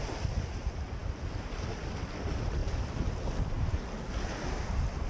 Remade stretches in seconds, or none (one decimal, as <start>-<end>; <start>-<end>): none